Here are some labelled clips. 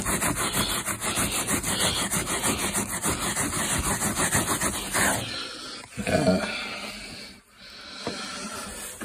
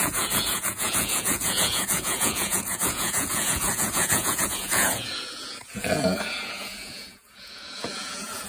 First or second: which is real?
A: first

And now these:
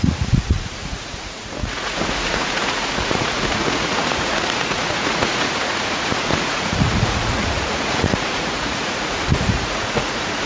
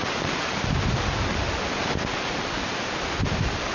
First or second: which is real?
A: second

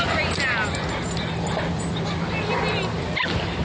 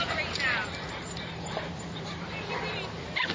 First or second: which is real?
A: first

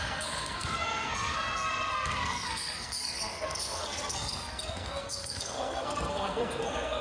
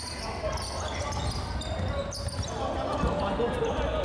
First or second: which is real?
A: second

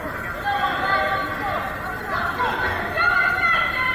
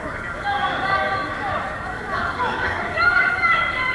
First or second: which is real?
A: first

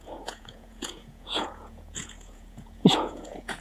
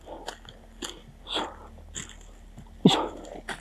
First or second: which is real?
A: second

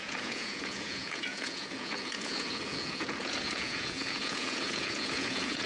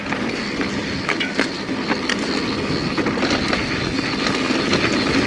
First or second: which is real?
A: second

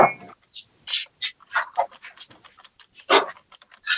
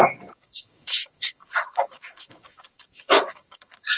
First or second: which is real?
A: first